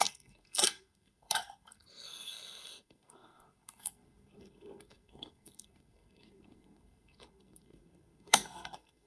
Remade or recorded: remade